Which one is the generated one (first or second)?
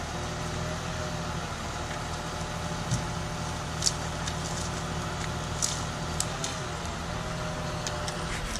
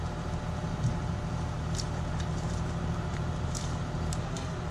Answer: second